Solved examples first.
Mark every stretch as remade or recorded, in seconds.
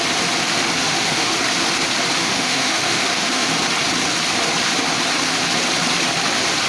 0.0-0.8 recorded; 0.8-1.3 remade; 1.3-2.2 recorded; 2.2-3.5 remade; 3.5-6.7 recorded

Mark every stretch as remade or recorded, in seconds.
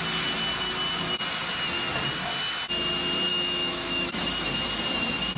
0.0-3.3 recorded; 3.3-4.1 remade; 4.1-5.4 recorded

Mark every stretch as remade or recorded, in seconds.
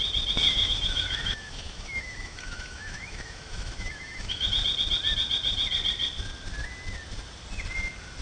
0.0-0.5 recorded; 0.5-4.5 remade; 4.5-8.2 recorded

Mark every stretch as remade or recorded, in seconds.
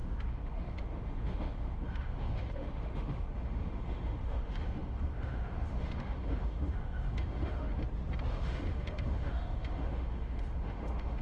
0.0-7.7 remade; 7.7-8.3 recorded; 8.3-11.2 remade